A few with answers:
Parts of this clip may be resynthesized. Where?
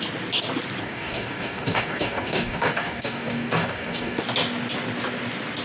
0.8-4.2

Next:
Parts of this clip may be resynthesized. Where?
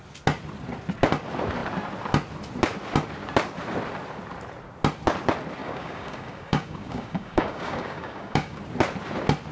5.6-8.6